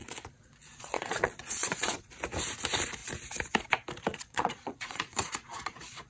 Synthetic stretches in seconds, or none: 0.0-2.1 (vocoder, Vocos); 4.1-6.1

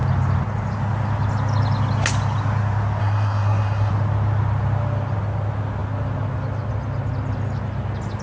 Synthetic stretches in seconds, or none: 3.0-3.9 (codec, SNAC)

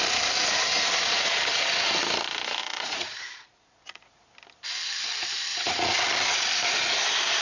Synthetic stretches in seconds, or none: 2.6-4.3 (vocoder, Vocos); 5.5-6.0

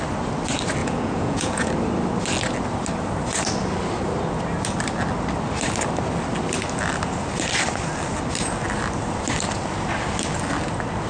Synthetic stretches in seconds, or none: 0.8-1.7 (vocoder, Vocos)

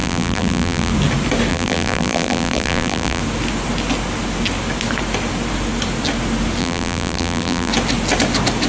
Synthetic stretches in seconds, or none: 0.0-0.9 (vocoder, BigVGAN v2); 1.5-3.2; 6.6-7.7

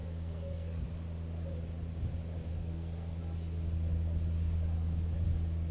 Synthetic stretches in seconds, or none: 0.0-0.8 (codec, SNAC); 2.5-3.2